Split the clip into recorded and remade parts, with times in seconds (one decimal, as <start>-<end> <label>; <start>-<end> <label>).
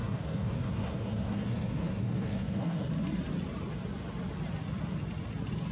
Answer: 0.0-2.9 remade; 2.9-5.7 recorded